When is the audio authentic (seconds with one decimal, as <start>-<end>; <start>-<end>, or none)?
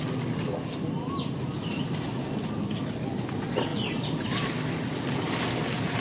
0.0-6.0